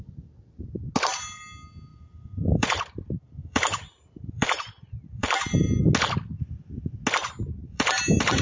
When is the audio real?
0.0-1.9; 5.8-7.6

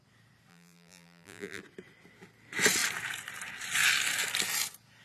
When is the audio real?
0.0-0.5; 1.6-5.0

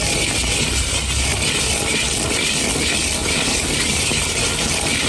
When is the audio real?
0.0-3.2; 4.2-5.1

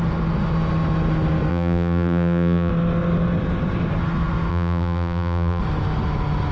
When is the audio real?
0.0-1.5; 2.7-4.5; 5.6-6.5

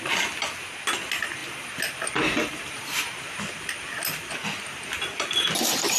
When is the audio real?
0.0-6.0

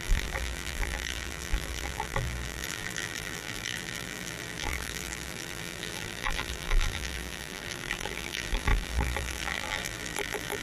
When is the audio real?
none